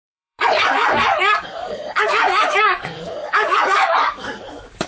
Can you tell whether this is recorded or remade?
remade